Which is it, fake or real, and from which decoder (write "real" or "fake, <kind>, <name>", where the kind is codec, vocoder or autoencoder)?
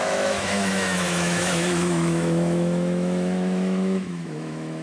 fake, autoencoder, DAC-VAE